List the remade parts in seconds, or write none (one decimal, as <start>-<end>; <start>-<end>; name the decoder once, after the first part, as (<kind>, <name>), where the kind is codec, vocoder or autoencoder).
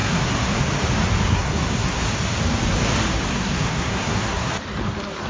0.0-0.6 (codec, SNAC); 1.3-2.0; 3.3-4.5